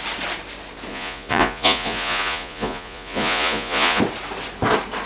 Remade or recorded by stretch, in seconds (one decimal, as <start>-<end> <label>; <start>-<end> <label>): 0.0-0.9 recorded; 0.9-4.0 remade; 4.0-5.1 recorded

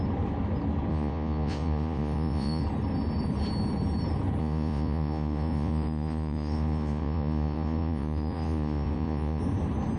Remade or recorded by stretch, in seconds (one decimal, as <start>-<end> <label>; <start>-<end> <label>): 0.0-0.9 recorded; 0.9-2.6 remade; 2.6-4.4 recorded; 4.4-9.4 remade; 9.4-10.0 recorded